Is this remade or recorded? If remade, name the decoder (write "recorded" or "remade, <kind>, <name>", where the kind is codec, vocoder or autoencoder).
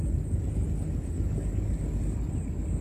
recorded